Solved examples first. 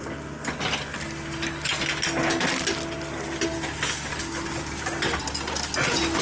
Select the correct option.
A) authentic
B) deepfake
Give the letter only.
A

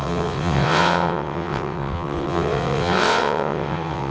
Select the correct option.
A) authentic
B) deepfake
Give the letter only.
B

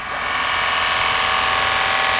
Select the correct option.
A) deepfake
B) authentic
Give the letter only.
B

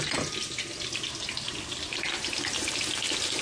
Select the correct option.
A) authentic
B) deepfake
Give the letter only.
A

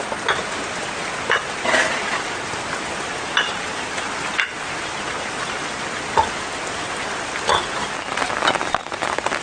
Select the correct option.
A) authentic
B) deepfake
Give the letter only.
A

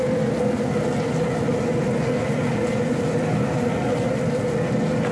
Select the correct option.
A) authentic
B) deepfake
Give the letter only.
A